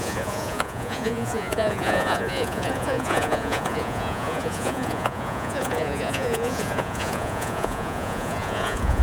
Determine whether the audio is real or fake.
fake